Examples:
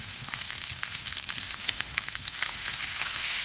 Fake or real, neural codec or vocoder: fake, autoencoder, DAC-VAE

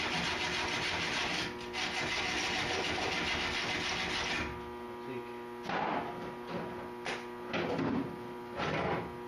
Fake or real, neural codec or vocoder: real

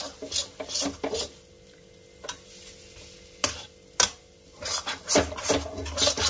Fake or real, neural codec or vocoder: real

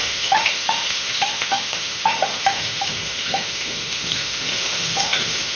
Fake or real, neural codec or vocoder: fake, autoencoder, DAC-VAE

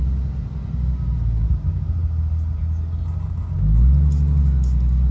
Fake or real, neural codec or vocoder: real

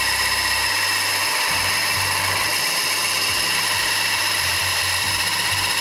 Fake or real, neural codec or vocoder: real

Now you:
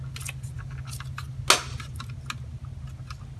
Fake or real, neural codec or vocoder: real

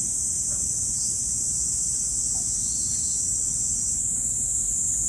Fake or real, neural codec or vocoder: real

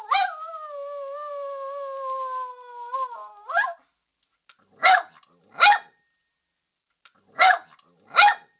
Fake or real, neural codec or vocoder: real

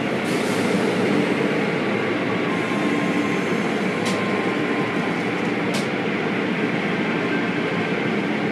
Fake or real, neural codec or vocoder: real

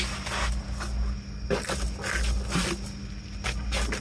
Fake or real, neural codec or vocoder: real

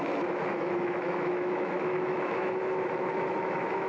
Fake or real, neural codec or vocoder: fake, autoencoder, DAC-VAE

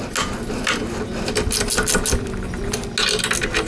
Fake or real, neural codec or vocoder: real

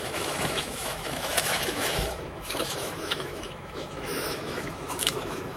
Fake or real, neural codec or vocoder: fake, autoencoder, DAC-VAE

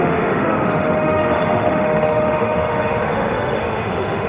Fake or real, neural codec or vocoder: fake, autoencoder, DAC-VAE